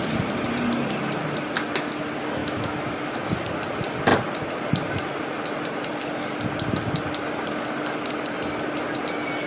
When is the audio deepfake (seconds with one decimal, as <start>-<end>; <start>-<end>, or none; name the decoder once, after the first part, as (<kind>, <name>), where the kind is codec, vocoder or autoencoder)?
2.4-3.3 (autoencoder, DAC-VAE)